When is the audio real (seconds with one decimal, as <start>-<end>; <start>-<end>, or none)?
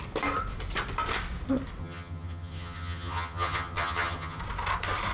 0.0-1.8; 4.4-5.1